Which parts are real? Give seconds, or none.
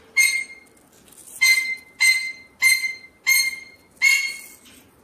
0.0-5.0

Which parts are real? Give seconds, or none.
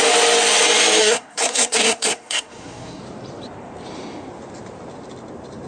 0.0-1.0; 3.0-5.7